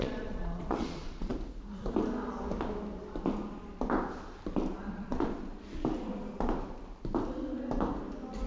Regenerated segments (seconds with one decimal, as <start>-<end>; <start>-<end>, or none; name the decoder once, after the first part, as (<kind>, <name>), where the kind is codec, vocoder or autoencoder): 0.0-1.3 (vocoder, Vocos); 4.9-5.5